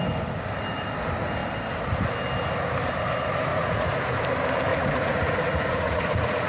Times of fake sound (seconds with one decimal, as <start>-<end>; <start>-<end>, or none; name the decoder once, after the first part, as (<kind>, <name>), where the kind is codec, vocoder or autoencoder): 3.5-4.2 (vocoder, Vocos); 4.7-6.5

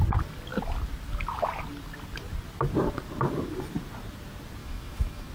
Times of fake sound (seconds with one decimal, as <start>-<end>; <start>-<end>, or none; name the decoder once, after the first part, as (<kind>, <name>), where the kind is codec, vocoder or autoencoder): 4.6-5.3 (autoencoder, DAC-VAE)

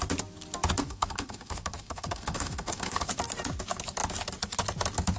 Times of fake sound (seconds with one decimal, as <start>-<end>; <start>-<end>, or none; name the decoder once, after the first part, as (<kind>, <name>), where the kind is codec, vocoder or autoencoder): 0.8-3.1 (codec, SNAC)